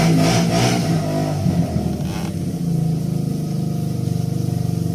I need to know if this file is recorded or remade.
recorded